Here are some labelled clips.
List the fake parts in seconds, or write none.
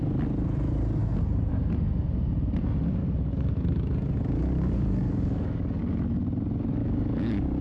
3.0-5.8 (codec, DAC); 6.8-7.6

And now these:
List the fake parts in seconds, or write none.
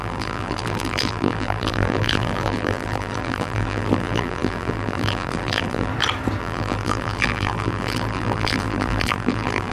0.0-5.9 (vocoder, BigVGAN v2); 6.4-9.7